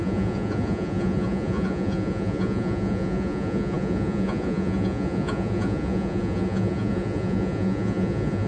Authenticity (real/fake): fake